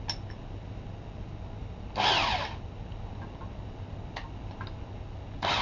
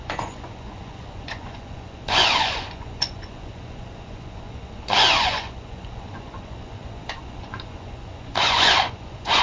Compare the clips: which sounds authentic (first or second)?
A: first